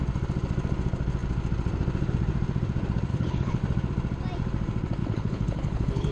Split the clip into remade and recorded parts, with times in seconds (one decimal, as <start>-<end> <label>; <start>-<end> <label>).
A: 0.0-3.1 recorded; 3.1-3.6 remade; 3.6-5.0 recorded; 5.0-6.1 remade